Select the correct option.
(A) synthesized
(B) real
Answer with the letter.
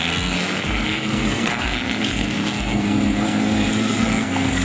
A